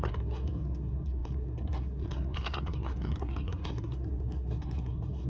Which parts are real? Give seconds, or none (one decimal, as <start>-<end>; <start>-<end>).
none